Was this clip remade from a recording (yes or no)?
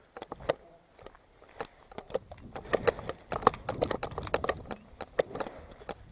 no